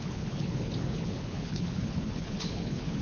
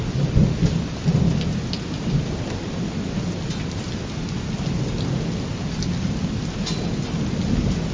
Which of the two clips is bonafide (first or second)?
second